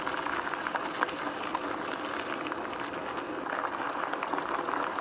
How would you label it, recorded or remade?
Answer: recorded